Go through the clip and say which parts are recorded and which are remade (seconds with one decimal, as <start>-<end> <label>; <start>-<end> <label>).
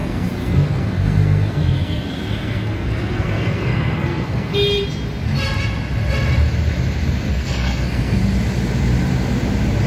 0.0-4.5 remade; 4.5-7.3 recorded; 7.3-8.2 remade; 8.2-9.9 recorded